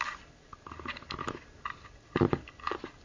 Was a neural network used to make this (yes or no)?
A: no